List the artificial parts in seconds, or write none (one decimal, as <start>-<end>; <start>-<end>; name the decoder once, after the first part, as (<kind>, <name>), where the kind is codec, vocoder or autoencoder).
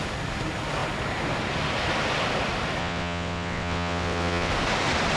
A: 2.8-4.5 (vocoder, WaveNeXt)